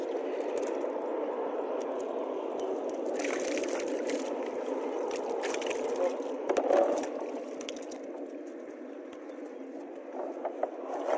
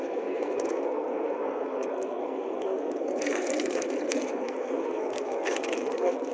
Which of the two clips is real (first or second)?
first